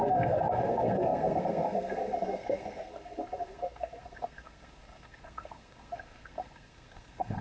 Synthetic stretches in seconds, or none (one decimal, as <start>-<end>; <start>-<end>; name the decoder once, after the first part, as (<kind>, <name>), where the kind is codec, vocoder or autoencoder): 0.0-7.4 (codec, SNAC)

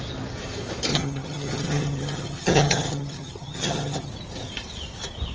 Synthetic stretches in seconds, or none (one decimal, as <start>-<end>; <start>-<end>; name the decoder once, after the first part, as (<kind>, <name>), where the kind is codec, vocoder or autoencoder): 0.9-4.1 (vocoder, HiFi-GAN)

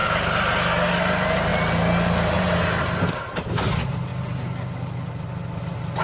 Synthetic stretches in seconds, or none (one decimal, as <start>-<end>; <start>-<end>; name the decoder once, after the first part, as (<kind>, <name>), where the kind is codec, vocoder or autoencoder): none

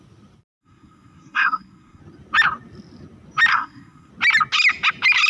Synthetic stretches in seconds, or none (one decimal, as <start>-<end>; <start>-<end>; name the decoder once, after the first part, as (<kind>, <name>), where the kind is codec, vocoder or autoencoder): 0.5-2.0 (codec, SNAC); 3.5-4.1

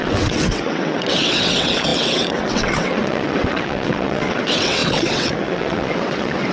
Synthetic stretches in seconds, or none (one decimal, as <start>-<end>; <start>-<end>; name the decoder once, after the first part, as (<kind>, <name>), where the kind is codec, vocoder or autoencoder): 0.0-6.5 (vocoder, WaveNeXt)

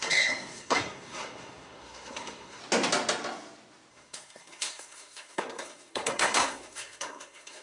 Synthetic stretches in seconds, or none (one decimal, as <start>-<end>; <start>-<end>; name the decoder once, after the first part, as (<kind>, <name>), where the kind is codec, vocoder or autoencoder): 0.0-2.6 (codec, SNAC); 3.9-7.6

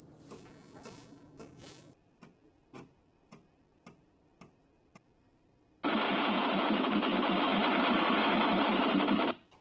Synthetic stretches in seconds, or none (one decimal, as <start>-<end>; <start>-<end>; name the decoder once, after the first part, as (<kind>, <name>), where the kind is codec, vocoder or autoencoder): 6.1-6.9 (vocoder, Vocos)

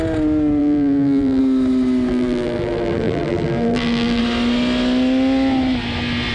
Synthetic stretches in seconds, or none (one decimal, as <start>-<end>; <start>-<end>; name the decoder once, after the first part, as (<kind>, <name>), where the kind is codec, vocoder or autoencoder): 0.6-1.4 (vocoder, BigVGAN v2); 2.1-4.2